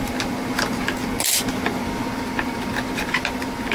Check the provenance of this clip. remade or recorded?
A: recorded